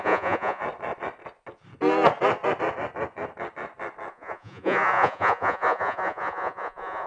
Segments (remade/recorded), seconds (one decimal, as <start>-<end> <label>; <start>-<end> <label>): 0.0-0.6 remade; 0.6-4.1 recorded; 4.1-7.1 remade